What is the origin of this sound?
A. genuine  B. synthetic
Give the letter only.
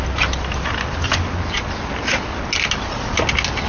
A